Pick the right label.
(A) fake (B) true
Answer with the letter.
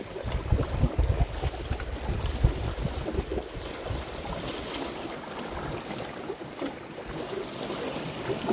B